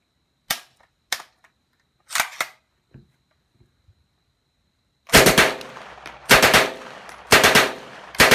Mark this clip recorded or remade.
recorded